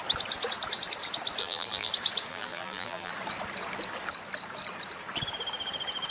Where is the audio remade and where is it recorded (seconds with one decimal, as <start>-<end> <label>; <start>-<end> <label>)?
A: 0.0-1.4 recorded; 1.4-1.9 remade; 1.9-2.3 recorded; 2.3-3.1 remade; 3.1-6.1 recorded